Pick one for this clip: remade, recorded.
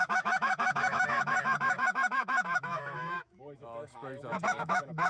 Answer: remade